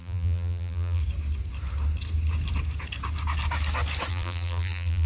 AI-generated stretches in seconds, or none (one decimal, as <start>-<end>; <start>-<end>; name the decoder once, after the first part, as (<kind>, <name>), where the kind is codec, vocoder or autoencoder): 0.0-1.0 (vocoder, BigVGAN v2); 4.1-5.1